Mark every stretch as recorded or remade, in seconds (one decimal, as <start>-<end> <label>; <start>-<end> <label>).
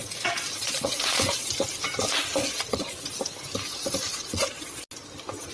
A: 0.0-1.5 remade; 1.5-2.4 recorded; 2.4-3.1 remade; 3.1-4.1 recorded; 4.1-4.8 remade; 4.8-5.5 recorded